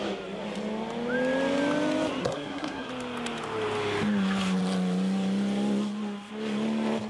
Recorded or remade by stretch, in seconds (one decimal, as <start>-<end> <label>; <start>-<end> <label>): 0.0-2.2 recorded; 2.2-2.9 remade; 2.9-7.1 recorded